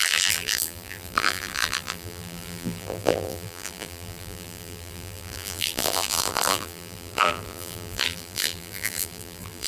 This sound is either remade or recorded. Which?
remade